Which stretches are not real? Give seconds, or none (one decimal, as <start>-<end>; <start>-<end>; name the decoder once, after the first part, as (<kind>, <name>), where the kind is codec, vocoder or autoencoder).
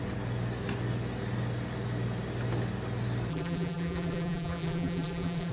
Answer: 3.3-5.5 (vocoder, BigVGAN v2)